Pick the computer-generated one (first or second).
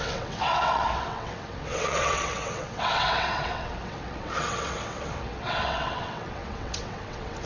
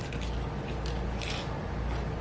first